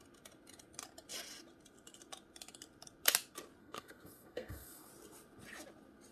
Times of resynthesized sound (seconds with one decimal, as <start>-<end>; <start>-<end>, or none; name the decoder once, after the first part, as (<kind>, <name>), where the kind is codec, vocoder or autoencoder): 3.6-4.9 (codec, SNAC)